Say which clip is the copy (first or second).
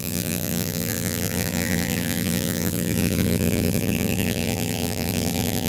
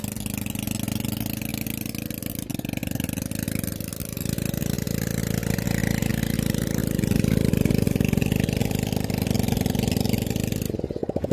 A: first